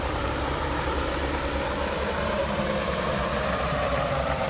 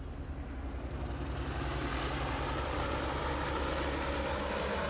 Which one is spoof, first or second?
first